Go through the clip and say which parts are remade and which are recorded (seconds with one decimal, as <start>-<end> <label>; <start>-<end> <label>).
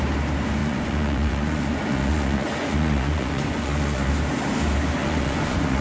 0.0-0.6 recorded; 0.6-4.1 remade; 4.1-5.0 recorded; 5.0-5.8 remade